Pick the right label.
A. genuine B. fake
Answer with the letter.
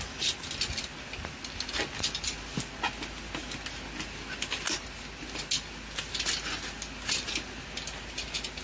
A